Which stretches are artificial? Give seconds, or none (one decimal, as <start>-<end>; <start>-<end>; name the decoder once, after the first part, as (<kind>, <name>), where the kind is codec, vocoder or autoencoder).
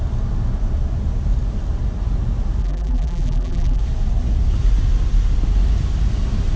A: 2.6-3.8 (vocoder, BigVGAN v2)